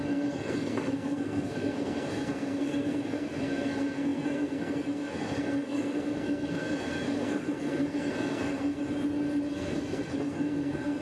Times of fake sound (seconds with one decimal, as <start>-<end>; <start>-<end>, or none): 0.0-8.8; 9.5-11.0